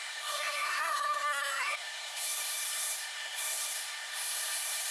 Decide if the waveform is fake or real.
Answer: fake